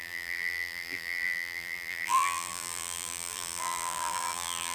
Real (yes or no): no